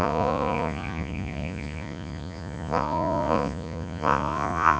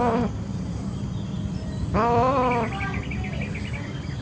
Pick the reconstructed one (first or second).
first